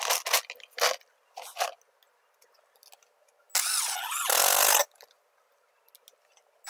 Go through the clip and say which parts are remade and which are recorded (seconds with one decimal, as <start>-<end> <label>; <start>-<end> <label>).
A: 0.0-6.7 recorded